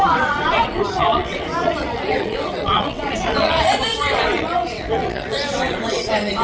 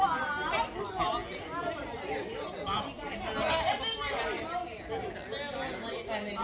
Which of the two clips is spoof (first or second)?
first